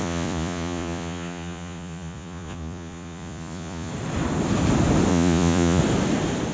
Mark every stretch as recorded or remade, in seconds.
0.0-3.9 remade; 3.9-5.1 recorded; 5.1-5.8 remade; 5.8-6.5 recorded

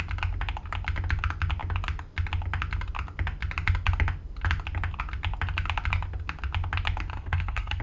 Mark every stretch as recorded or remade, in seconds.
0.0-7.1 recorded; 7.1-7.8 remade

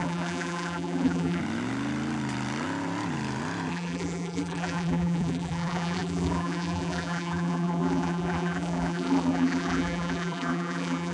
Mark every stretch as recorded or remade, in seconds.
0.0-1.4 remade; 1.4-3.7 recorded; 3.7-11.1 remade

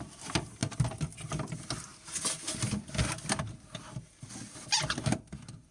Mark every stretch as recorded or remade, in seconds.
0.0-5.7 recorded